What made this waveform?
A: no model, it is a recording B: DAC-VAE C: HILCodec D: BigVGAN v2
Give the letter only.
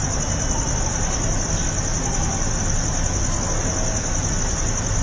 A